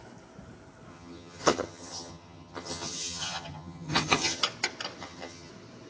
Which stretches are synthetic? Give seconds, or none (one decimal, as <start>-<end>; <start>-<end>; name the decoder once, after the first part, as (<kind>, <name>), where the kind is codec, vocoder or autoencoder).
0.9-4.4 (vocoder, HiFi-GAN); 5.0-5.5